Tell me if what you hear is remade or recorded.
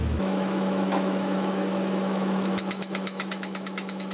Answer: remade